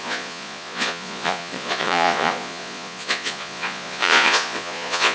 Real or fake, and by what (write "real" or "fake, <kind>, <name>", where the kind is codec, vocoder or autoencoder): fake, vocoder, Vocos